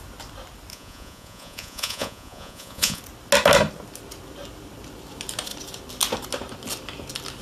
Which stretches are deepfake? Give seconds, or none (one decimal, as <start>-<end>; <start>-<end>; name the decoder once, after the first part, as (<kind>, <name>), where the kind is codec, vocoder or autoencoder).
0.7-3.0 (vocoder, Vocos)

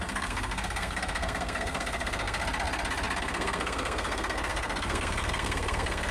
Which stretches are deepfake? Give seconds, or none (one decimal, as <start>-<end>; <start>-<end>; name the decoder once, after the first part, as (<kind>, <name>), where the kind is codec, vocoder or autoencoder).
0.0-2.4 (codec, SNAC); 3.2-6.1

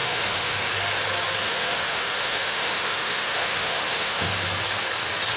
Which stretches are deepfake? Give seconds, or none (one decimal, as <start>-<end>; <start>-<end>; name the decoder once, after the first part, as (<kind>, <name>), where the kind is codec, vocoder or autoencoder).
0.0-0.7 (autoencoder, DAC-VAE); 1.4-4.3

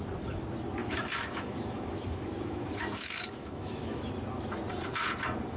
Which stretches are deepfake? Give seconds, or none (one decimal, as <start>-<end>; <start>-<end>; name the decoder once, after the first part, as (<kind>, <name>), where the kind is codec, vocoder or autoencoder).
0.8-4.1 (autoencoder, DAC-VAE)

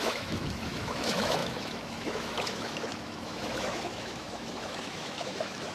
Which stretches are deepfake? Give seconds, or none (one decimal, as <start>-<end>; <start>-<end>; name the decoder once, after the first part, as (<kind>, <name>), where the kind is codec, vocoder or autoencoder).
0.0-5.7 (autoencoder, DAC-VAE)

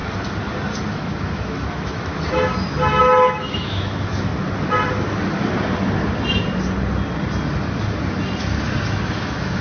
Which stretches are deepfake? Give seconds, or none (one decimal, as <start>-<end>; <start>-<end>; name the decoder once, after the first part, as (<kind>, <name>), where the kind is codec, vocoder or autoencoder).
0.9-2.1 (autoencoder, DAC-VAE); 3.0-4.3; 9.2-9.6